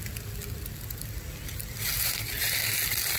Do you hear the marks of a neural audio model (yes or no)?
no